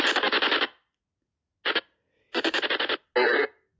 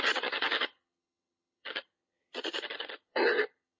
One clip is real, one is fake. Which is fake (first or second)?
second